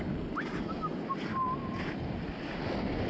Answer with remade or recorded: recorded